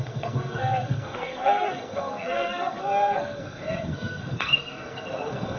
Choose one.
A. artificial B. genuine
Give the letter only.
A